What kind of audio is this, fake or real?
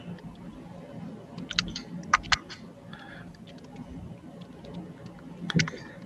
real